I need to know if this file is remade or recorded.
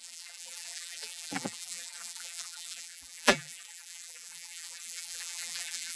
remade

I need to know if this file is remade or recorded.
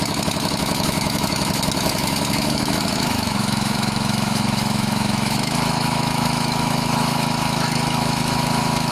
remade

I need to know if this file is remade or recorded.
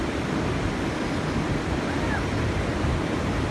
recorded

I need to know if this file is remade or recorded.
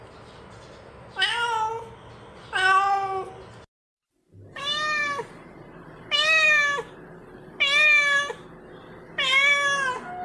recorded